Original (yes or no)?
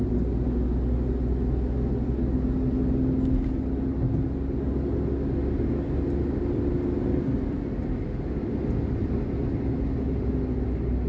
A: yes